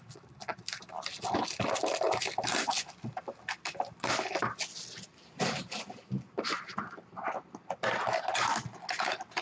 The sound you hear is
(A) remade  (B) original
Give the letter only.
B